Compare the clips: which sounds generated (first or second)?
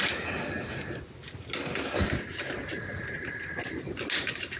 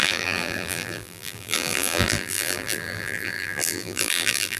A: second